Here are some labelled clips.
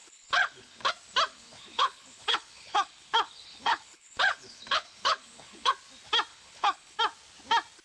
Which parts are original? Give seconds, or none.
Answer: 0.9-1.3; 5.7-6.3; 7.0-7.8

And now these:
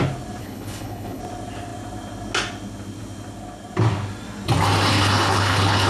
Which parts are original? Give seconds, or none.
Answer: 0.0-0.4; 1.2-4.9

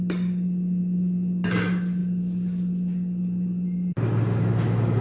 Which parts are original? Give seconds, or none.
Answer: 0.0-5.0

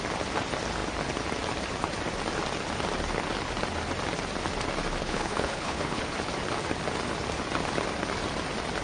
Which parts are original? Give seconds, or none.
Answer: 0.0-5.0; 6.0-8.8

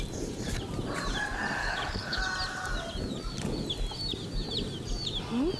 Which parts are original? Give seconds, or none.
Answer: 0.0-1.6; 2.2-5.6

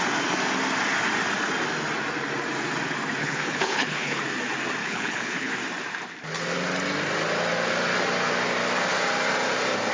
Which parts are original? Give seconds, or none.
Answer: 0.0-3.2; 4.2-4.8; 5.5-9.9

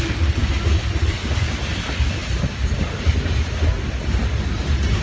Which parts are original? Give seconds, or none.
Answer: 0.0-5.0

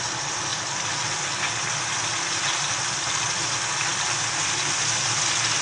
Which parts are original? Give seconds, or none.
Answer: 0.0-5.6